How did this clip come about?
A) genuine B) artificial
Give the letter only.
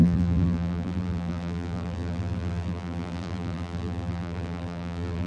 B